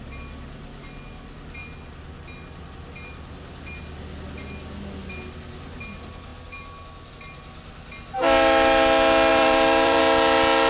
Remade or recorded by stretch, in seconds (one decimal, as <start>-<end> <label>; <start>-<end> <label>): 0.0-9.3 recorded; 9.3-10.0 remade; 10.0-10.7 recorded